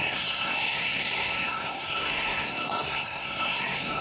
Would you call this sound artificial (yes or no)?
yes